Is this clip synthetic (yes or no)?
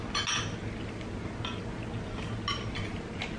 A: no